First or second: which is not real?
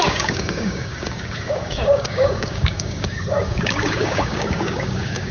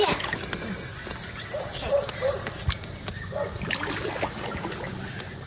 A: first